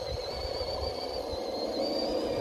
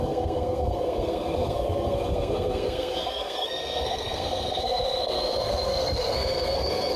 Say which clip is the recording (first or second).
first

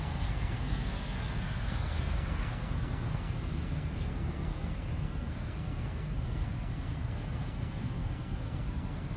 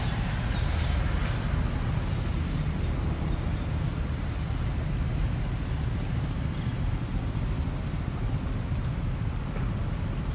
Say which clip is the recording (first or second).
second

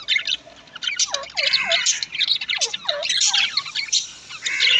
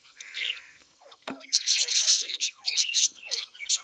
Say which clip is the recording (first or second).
first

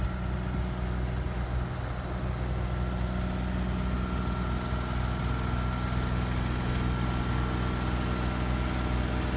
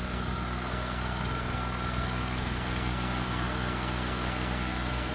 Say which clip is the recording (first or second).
first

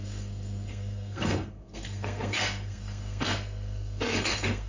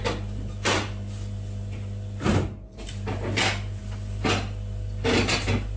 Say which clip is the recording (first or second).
second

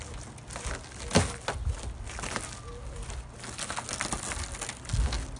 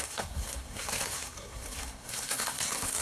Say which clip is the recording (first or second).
first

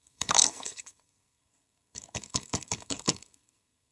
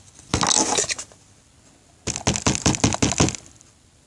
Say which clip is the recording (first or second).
second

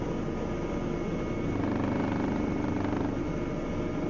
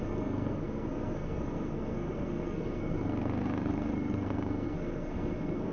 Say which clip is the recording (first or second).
first